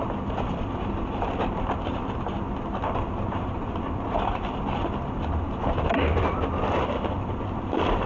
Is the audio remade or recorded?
remade